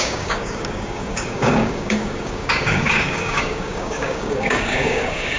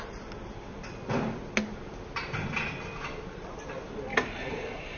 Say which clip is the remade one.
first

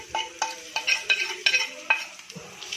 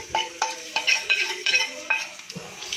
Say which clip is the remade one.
second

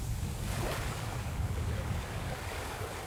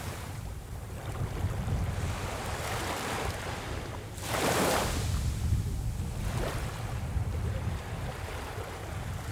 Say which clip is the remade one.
first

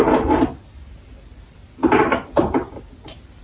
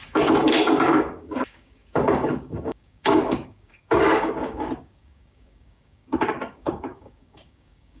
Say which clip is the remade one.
second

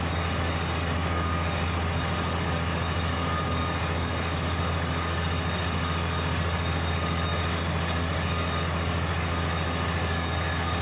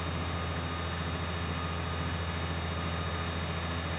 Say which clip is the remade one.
first